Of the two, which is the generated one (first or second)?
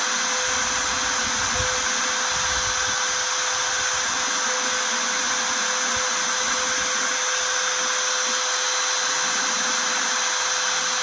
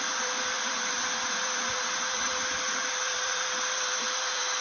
second